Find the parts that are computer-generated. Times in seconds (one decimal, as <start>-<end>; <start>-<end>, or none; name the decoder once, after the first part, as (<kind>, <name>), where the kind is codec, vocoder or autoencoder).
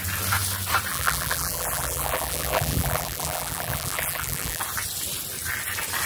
0.9-4.6 (vocoder, BigVGAN v2)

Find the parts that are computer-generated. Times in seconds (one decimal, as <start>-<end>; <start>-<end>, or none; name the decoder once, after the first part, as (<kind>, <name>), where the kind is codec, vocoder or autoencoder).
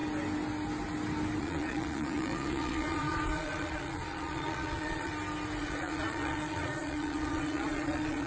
1.4-5.1 (vocoder, Vocos); 5.6-8.3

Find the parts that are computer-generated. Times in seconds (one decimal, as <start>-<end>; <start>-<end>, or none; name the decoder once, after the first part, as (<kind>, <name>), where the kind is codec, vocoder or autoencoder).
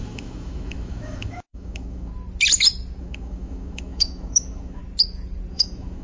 0.0-2.1 (autoencoder, DAC-VAE); 3.0-4.8; 5.5-6.0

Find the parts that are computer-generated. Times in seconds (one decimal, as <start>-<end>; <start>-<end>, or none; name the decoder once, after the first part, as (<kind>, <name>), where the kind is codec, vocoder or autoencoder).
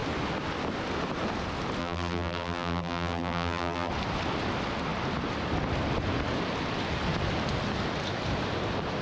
1.8-3.9 (vocoder, BigVGAN v2)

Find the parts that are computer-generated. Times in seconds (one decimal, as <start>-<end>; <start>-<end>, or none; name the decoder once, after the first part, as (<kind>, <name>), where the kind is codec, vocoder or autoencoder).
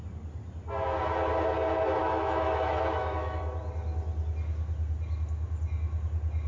2.0-3.4 (autoencoder, DAC-VAE)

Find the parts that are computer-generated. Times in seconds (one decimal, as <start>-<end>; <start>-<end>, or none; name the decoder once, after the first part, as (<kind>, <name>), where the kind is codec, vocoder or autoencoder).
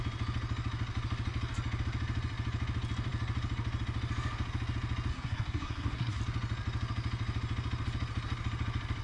5.1-6.2 (codec, SNAC)